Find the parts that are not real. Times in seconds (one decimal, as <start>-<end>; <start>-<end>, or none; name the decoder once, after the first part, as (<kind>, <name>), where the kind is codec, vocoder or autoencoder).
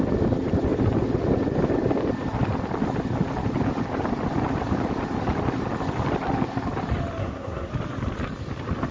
7.2-7.7 (codec, SNAC)